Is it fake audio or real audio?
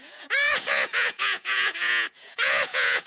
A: fake